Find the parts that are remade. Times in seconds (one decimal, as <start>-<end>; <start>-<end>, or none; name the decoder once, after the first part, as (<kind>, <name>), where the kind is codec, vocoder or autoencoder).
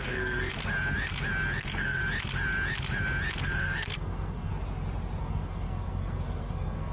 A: 0.0-0.5 (codec, SNAC); 1.6-2.0; 3.4-4.5; 5.2-6.9